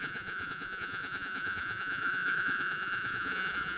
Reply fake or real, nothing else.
fake